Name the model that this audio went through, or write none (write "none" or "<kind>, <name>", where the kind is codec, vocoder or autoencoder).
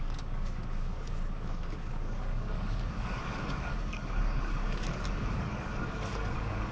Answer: codec, DAC